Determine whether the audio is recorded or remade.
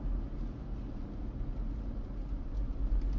recorded